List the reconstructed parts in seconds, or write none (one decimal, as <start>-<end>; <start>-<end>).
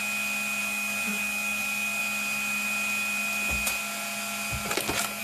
0.6-2.0